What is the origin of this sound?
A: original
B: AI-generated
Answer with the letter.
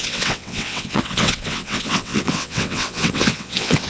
B